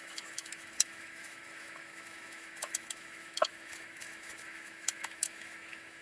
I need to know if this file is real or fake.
fake